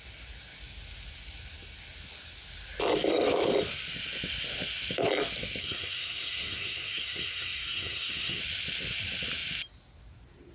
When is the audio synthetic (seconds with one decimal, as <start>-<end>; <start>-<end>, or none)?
5.6-8.4